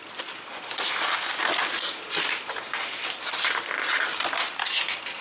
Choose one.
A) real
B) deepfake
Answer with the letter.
A